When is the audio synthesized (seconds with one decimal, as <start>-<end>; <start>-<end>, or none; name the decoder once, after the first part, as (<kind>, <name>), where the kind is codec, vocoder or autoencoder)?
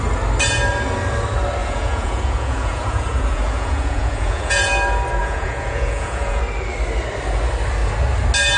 1.6-4.7 (vocoder, Vocos); 5.2-6.4